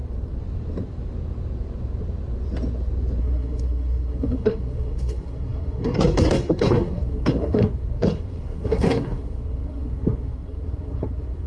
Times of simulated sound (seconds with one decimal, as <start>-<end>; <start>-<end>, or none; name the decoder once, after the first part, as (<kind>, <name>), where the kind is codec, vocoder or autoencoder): 3.2-11.5 (codec, SNAC)